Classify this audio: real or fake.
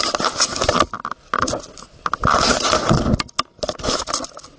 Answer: real